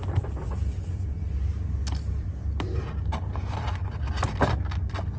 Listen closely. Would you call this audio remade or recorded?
recorded